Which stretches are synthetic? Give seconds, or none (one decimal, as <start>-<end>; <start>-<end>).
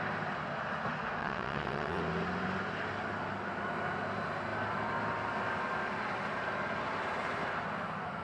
1.2-2.0